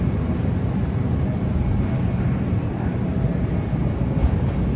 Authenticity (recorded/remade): recorded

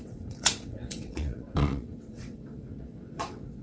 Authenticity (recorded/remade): remade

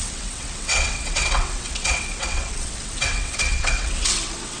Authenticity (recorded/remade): remade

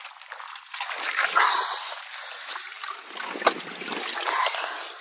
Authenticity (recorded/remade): recorded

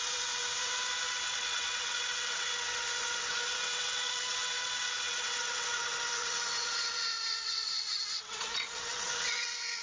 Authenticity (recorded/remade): remade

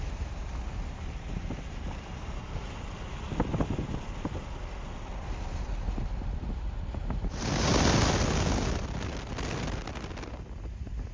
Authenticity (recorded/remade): recorded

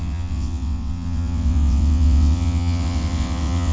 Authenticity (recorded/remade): remade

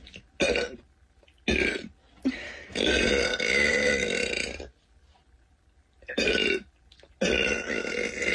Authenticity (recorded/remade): recorded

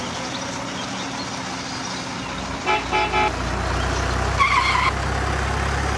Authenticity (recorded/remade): recorded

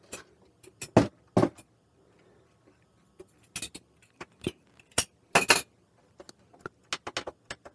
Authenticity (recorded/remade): recorded